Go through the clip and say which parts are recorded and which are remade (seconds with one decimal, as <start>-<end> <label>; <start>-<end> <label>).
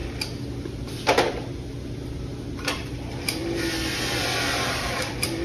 0.0-0.6 recorded; 0.6-3.4 remade; 3.4-4.2 recorded; 4.2-5.4 remade